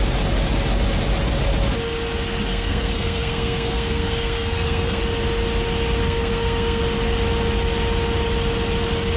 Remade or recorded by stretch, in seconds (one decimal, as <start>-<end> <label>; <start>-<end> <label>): 0.0-2.5 recorded; 2.5-5.0 remade; 5.0-6.0 recorded; 6.0-6.8 remade; 6.8-9.2 recorded